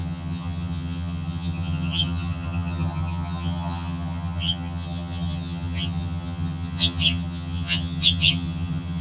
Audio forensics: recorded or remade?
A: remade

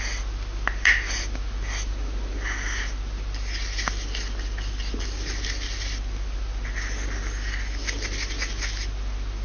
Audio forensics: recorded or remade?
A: recorded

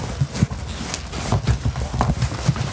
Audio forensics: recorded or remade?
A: recorded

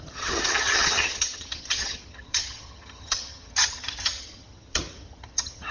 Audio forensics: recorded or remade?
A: remade